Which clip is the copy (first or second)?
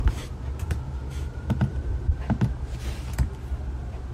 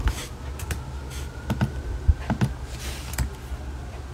first